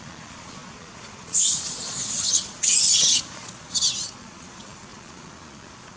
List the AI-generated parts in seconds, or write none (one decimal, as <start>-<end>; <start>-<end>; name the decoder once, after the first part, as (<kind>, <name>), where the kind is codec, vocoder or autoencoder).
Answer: 0.0-6.0 (vocoder, Vocos)